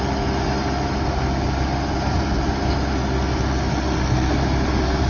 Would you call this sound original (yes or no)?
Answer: yes